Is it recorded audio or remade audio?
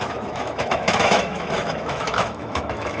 remade